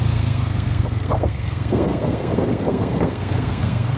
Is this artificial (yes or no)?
yes